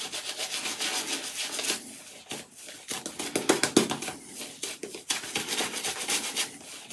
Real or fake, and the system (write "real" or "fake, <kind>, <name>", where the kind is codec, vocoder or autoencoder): real